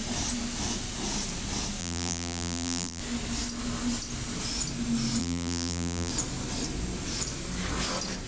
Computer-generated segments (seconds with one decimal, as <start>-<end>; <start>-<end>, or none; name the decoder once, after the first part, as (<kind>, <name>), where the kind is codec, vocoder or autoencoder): 1.8-3.0 (vocoder, BigVGAN v2); 5.2-6.1